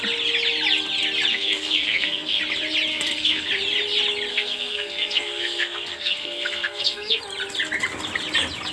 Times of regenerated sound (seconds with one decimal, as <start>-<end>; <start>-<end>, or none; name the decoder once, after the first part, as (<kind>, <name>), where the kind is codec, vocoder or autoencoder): 1.3-2.4 (codec, SNAC); 2.9-3.5; 4.3-7.2